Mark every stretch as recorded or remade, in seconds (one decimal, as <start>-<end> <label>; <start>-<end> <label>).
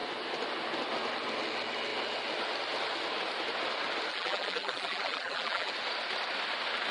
0.0-4.1 recorded; 4.1-5.7 remade; 5.7-6.9 recorded